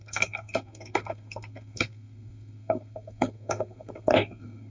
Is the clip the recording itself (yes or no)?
no